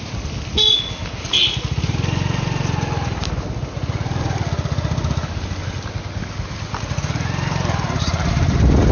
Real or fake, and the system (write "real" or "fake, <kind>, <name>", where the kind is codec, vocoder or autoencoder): real